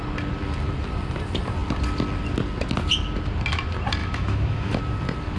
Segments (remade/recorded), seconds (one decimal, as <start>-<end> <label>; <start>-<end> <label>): 0.0-4.0 recorded; 4.0-4.8 remade; 4.8-5.4 recorded